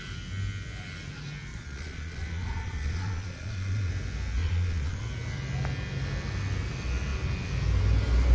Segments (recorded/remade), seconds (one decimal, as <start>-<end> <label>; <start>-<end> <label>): 0.0-1.5 recorded; 1.5-3.9 remade; 3.9-4.4 recorded; 4.4-5.0 remade; 5.0-8.3 recorded